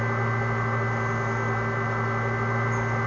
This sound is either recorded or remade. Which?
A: recorded